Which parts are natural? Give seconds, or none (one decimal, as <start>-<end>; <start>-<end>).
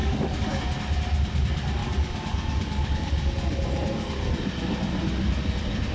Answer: 0.6-1.8; 3.3-5.9